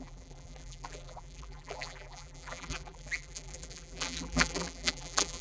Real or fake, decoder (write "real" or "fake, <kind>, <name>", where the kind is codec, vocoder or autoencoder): fake, vocoder, BigVGAN v2